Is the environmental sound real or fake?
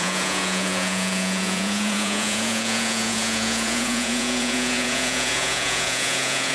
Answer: fake